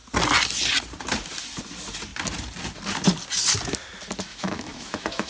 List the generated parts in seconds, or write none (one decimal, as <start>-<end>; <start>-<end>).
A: 4.3-5.3